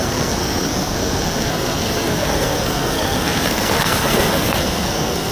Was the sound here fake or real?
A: fake